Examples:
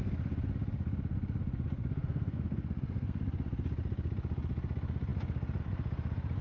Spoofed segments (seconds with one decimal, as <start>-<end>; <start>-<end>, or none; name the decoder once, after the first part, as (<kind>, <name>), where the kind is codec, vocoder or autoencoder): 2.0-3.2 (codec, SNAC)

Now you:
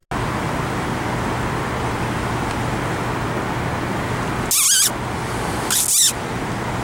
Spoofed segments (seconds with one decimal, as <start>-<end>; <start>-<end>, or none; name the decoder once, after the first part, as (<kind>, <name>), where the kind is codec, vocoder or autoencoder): none

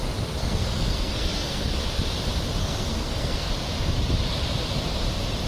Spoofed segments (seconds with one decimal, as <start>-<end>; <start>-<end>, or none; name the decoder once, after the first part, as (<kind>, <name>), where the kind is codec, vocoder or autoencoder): 0.4-1.8 (codec, SNAC); 2.6-3.5